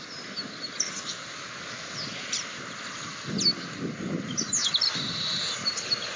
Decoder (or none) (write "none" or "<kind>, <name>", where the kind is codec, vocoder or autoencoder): none